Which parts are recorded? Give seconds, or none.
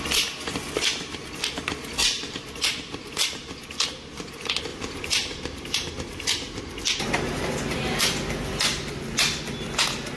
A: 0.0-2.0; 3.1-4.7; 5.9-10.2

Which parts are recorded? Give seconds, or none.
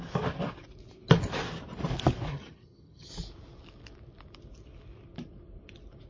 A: 0.0-2.3; 3.1-6.1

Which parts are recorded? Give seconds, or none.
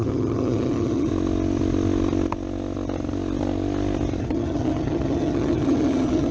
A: 1.1-4.2